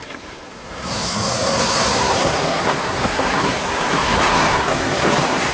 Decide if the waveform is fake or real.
fake